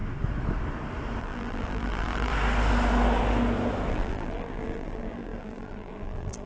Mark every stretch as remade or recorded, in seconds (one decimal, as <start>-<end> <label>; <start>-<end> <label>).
0.0-1.2 recorded; 1.2-2.3 remade; 2.3-3.9 recorded; 3.9-6.5 remade